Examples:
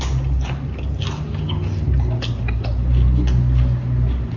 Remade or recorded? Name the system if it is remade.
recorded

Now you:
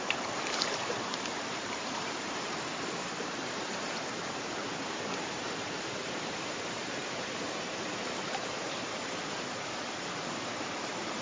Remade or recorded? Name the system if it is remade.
remade, vocoder, BigVGAN v2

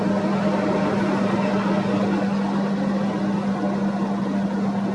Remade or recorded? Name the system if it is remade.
recorded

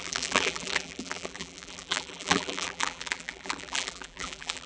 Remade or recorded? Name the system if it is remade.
remade, vocoder, BigVGAN v2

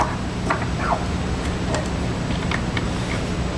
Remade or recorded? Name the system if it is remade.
recorded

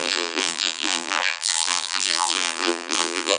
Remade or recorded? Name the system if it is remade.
remade, vocoder, BigVGAN v2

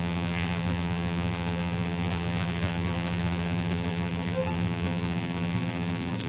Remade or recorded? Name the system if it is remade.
remade, vocoder, BigVGAN v2